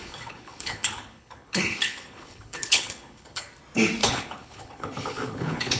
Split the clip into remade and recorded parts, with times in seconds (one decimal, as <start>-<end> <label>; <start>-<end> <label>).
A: 0.0-3.5 remade; 3.5-4.0 recorded; 4.0-5.8 remade